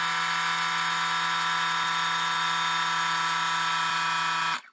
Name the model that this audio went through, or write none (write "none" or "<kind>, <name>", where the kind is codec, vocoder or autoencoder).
none